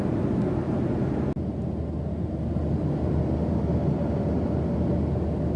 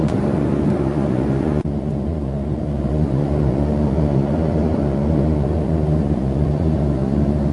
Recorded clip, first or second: first